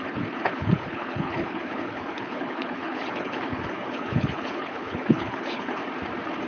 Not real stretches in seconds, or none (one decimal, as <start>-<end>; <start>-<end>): 0.0-5.8